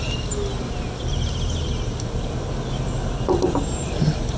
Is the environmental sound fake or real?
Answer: real